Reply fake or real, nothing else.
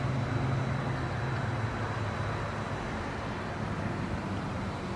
real